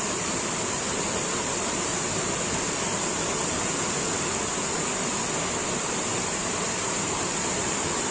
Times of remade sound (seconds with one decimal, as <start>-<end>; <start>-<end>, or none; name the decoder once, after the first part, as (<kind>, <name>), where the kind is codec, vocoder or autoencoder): 0.0-1.9 (vocoder, BigVGAN v2); 4.5-5.1; 5.8-8.1

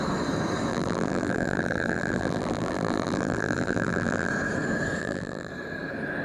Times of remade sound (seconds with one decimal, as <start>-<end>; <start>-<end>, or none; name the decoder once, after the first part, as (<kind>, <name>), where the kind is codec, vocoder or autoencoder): 0.7-4.3 (vocoder, BigVGAN v2); 5.0-5.5